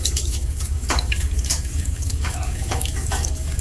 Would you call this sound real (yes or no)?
no